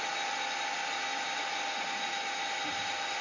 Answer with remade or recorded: recorded